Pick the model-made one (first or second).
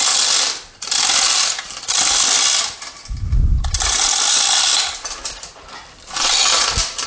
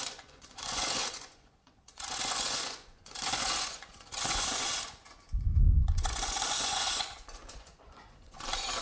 second